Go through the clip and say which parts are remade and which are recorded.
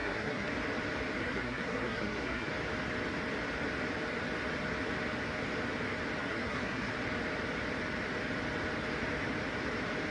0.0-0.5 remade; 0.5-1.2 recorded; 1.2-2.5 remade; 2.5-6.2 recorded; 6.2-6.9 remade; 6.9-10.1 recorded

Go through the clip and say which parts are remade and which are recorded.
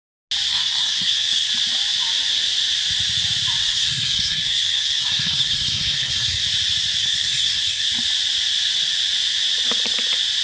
0.0-0.5 recorded; 0.5-1.5 remade; 1.5-3.6 recorded; 3.6-6.4 remade; 6.4-7.0 recorded; 7.0-7.9 remade; 7.9-10.4 recorded